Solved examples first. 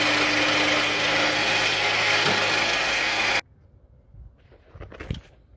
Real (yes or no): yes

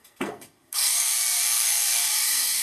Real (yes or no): no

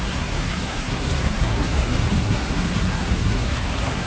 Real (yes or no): no